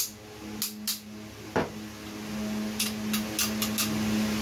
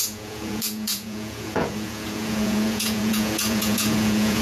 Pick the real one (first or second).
first